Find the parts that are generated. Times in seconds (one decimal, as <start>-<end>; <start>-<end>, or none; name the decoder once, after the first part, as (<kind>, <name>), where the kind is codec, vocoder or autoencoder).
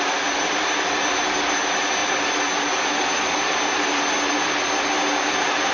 none